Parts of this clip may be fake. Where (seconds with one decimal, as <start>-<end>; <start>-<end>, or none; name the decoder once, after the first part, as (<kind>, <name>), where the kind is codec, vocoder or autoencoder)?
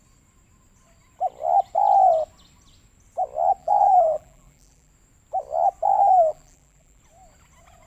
3.6-4.9 (vocoder, BigVGAN v2); 5.9-7.0